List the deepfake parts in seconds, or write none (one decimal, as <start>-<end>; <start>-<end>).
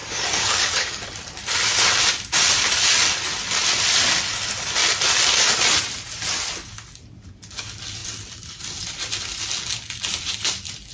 0.0-1.0